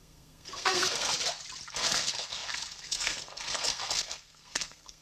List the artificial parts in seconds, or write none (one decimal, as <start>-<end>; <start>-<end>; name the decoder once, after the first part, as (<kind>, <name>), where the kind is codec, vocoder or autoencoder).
0.0-1.1 (codec, SNAC); 1.7-5.0